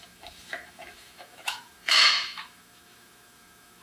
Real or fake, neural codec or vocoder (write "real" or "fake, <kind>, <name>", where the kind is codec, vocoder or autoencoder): fake, autoencoder, DAC-VAE